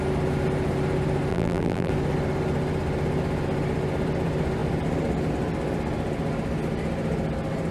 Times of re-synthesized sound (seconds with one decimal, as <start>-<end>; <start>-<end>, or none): 1.3-1.9